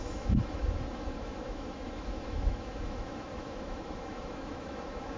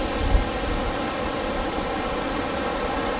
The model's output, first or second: first